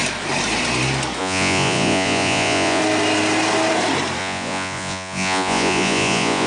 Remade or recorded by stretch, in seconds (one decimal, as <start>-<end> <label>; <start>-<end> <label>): 0.0-1.2 recorded; 1.2-2.8 remade; 2.8-4.2 recorded; 4.2-6.5 remade